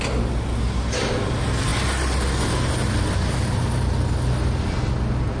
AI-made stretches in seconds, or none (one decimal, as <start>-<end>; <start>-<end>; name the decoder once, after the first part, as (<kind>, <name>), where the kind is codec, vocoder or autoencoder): none